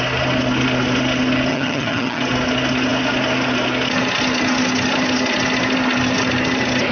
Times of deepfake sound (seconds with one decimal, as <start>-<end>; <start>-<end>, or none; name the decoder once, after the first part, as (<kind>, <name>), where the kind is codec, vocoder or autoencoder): 1.5-2.2 (vocoder, HiFi-GAN)